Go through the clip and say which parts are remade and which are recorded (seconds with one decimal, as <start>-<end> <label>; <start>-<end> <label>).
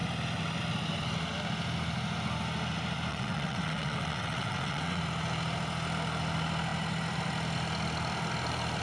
0.0-3.1 recorded; 3.1-5.0 remade; 5.0-8.8 recorded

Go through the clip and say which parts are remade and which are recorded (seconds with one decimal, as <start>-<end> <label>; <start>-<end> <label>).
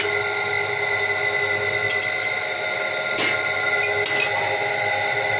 0.0-5.4 recorded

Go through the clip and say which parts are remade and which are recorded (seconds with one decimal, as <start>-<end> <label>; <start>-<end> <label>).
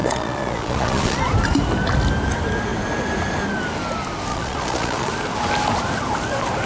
0.0-1.2 remade; 1.2-4.3 recorded; 4.3-5.1 remade; 5.1-6.7 recorded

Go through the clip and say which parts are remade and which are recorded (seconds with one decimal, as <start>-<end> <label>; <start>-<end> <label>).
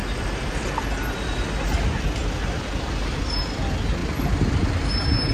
0.0-5.3 recorded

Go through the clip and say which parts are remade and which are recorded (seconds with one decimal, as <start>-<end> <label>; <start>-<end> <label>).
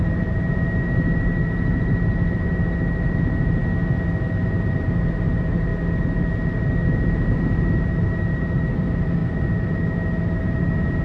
0.0-3.6 remade; 3.6-4.2 recorded; 4.2-5.7 remade; 5.7-7.1 recorded; 7.1-9.2 remade; 9.2-10.4 recorded; 10.4-11.0 remade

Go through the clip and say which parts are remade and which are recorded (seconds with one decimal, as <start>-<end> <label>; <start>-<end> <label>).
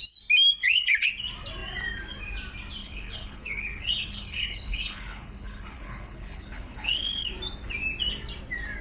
0.0-0.6 recorded; 0.6-1.1 remade; 1.1-2.8 recorded; 2.8-7.3 remade; 7.3-8.8 recorded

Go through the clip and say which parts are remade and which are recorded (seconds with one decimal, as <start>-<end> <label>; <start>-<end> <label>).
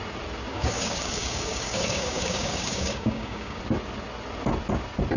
0.0-0.5 recorded; 0.5-3.6 remade; 3.6-5.2 recorded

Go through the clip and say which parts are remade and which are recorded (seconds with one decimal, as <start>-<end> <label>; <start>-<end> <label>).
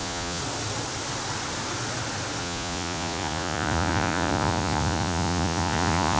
0.0-0.4 remade; 0.4-2.4 recorded; 2.4-6.2 remade